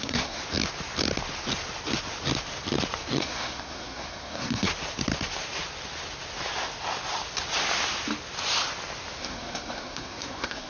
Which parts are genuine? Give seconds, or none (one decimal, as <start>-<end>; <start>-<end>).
0.4-3.2; 4.7-9.2